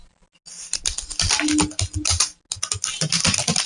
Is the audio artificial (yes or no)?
no